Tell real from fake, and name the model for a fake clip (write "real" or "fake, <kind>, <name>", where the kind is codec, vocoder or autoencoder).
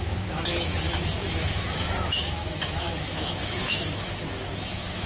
fake, autoencoder, DAC-VAE